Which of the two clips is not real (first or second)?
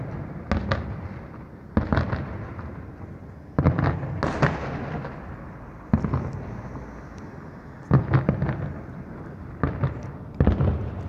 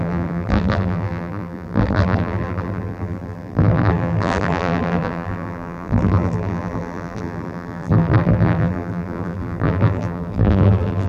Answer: second